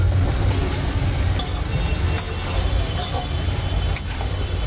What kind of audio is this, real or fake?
real